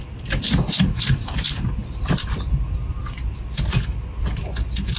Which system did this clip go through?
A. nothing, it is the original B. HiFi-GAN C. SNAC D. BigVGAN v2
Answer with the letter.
A